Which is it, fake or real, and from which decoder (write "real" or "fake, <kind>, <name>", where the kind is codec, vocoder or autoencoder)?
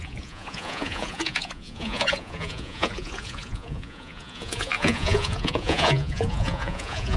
fake, vocoder, Vocos